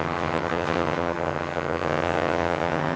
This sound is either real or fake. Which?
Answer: fake